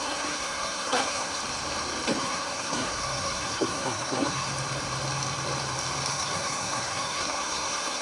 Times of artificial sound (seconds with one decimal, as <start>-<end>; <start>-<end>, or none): 0.0-1.4; 2.2-4.5; 6.1-8.0